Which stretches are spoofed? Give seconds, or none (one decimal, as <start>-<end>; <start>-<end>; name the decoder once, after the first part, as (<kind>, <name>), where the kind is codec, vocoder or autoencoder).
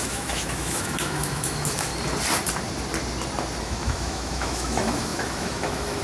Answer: 0.0-1.9 (autoencoder, DAC-VAE); 3.6-6.0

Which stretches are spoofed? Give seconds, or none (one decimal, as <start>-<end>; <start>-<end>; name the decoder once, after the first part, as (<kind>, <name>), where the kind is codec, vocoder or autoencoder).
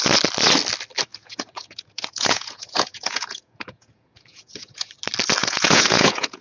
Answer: 1.1-4.9 (vocoder, Vocos); 5.4-6.4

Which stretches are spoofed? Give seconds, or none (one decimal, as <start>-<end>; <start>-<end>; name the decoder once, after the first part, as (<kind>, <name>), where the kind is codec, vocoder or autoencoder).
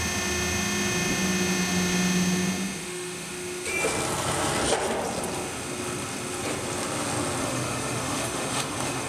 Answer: 2.8-3.3 (autoencoder, DAC-VAE); 7.4-9.1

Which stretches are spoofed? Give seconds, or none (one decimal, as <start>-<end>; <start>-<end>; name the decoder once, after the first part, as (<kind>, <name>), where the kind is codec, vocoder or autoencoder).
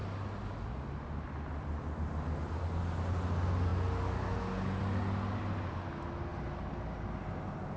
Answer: none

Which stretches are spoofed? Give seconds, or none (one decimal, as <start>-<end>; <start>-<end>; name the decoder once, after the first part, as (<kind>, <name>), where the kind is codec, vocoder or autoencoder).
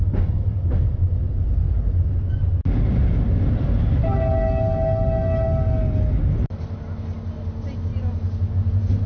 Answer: none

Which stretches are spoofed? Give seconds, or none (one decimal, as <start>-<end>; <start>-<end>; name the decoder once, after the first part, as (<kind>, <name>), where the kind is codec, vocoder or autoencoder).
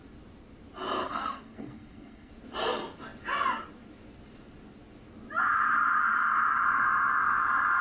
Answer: 1.0-2.3 (codec, SNAC)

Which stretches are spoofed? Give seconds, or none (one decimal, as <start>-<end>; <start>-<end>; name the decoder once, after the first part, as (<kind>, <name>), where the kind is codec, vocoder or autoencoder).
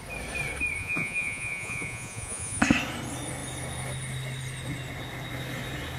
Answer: 0.8-2.6 (vocoder, Vocos)